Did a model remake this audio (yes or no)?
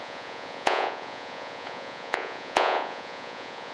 yes